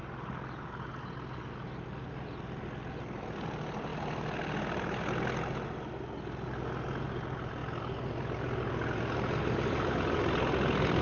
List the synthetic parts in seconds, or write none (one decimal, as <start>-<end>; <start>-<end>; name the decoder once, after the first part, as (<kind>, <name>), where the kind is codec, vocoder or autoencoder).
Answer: none